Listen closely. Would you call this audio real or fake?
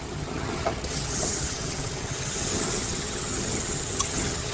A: fake